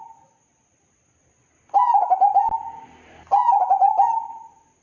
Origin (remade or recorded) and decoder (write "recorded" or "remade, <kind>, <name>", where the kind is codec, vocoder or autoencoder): recorded